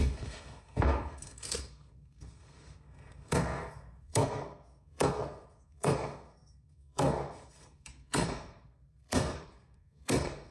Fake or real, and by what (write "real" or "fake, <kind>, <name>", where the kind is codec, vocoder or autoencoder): fake, codec, SNAC